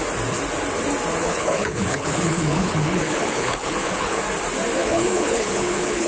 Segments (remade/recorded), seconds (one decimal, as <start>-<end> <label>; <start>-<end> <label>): 0.0-1.2 recorded; 1.2-4.2 remade; 4.2-4.8 recorded; 4.8-6.1 remade